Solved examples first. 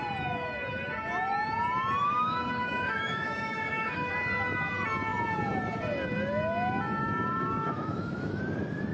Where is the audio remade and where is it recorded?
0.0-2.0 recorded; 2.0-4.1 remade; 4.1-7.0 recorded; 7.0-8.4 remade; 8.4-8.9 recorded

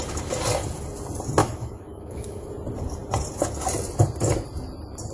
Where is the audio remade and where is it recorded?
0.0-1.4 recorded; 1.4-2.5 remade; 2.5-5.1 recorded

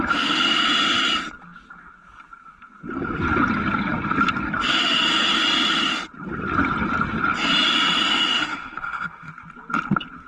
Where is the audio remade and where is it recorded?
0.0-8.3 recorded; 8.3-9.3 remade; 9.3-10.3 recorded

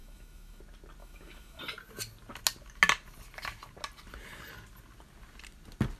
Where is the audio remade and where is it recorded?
0.0-0.6 remade; 0.6-1.0 recorded; 1.0-1.6 remade; 1.6-6.0 recorded

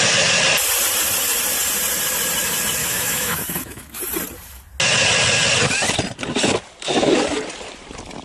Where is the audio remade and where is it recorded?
0.0-2.8 recorded; 2.8-4.0 remade; 4.0-8.2 recorded

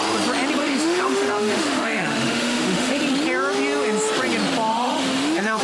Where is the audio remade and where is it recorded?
0.0-0.6 recorded; 0.6-3.0 remade; 3.0-4.7 recorded; 4.7-5.6 remade

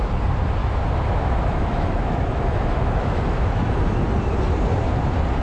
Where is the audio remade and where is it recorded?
0.0-0.6 recorded; 0.6-3.8 remade; 3.8-5.4 recorded